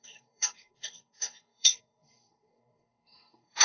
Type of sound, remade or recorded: remade